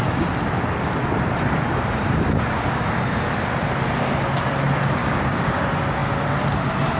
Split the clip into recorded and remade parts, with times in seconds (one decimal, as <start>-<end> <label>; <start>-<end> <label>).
0.0-5.0 recorded; 5.0-5.5 remade; 5.5-7.0 recorded